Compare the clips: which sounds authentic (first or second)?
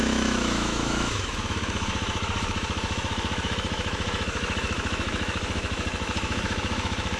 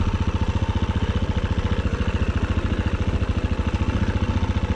second